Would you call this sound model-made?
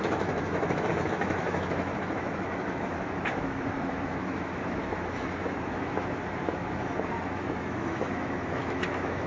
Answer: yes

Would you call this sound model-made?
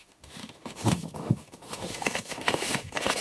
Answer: yes